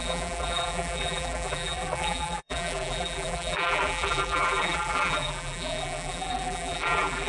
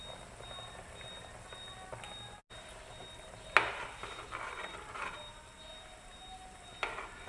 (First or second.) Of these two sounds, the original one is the second